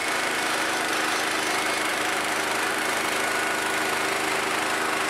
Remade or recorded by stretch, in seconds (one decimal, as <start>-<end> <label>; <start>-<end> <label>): 0.0-0.9 remade; 0.9-1.9 recorded; 1.9-2.8 remade; 2.8-5.1 recorded